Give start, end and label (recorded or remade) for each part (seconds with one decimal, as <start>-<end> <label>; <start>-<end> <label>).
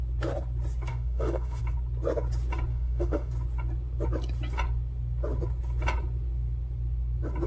0.0-0.9 recorded; 0.9-1.6 remade; 1.6-2.7 recorded; 2.7-3.3 remade; 3.3-7.5 recorded